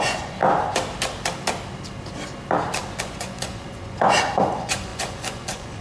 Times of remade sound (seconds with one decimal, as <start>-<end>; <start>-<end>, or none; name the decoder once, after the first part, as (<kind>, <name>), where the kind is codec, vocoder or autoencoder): 0.0-0.4 (vocoder, Vocos); 3.0-5.8